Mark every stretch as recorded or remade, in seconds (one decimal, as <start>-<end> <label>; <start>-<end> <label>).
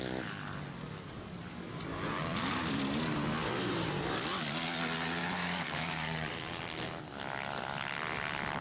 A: 0.0-5.2 recorded; 5.2-6.6 remade; 6.6-8.6 recorded